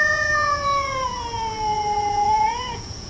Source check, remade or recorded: remade